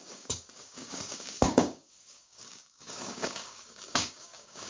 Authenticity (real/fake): fake